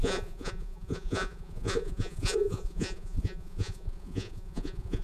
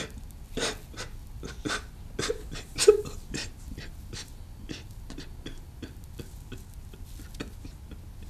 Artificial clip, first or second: first